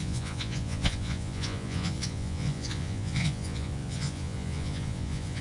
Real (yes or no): no